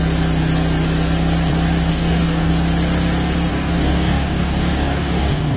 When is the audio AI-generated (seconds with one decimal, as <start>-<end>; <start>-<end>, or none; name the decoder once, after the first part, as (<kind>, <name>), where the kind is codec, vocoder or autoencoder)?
1.9-2.5 (codec, DAC); 3.5-5.6